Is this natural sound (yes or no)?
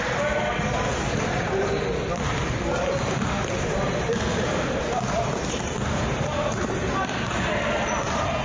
yes